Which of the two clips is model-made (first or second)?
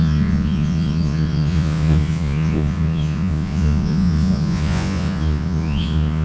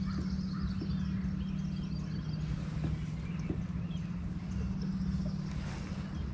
first